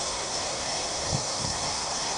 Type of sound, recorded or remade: remade